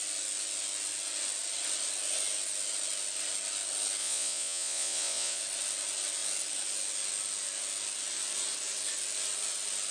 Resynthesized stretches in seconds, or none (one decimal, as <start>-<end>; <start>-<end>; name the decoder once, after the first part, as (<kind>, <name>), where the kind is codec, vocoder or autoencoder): 4.0-5.4 (vocoder, Vocos)